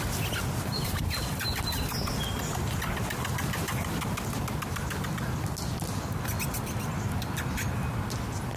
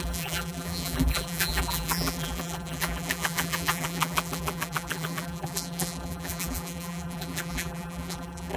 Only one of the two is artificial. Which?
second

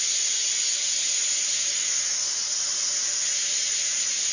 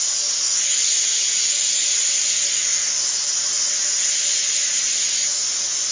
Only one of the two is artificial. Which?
first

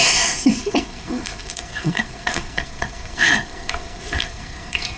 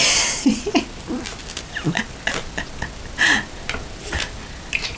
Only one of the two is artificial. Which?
first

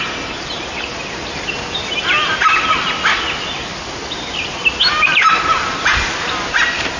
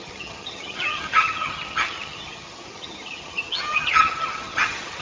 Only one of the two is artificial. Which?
second